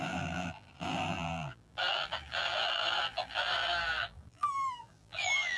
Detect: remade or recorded remade